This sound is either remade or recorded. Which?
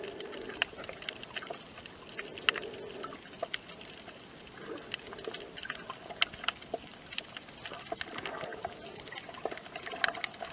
recorded